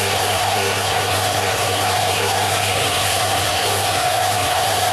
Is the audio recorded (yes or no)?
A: no